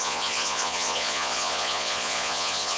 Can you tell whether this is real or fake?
fake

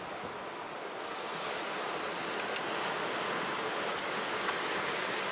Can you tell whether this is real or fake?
real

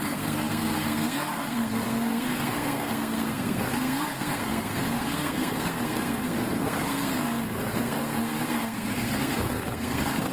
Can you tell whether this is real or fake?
fake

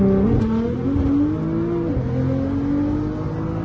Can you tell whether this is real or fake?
real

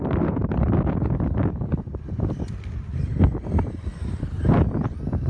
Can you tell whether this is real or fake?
real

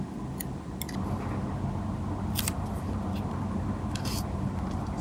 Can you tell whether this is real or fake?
real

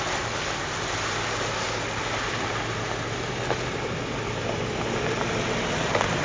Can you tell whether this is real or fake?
real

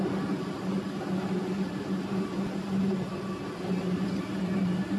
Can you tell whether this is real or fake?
real